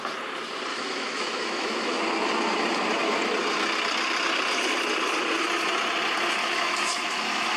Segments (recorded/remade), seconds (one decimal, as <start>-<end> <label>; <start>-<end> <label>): 0.0-0.7 recorded; 0.7-2.0 remade; 2.0-6.4 recorded; 6.4-7.6 remade